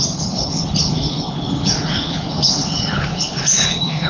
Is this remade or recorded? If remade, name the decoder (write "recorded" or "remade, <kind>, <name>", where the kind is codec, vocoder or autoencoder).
remade, codec, HILCodec